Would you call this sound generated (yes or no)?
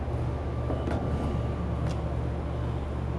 no